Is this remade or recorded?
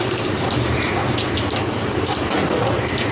remade